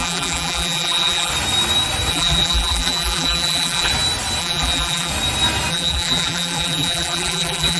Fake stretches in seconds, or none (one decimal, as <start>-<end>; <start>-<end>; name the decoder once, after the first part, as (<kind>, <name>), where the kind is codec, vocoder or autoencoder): 0.0-1.3 (vocoder, BigVGAN v2); 2.1-3.9; 4.4-5.1; 5.7-7.8